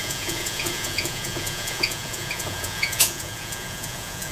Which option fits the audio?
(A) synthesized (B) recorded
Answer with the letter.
A